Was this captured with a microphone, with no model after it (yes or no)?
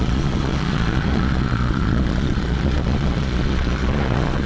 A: no